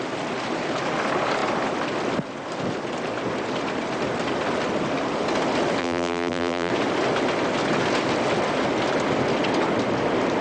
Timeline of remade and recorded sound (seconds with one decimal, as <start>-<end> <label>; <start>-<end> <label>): 0.0-5.8 recorded; 5.8-6.7 remade; 6.7-10.4 recorded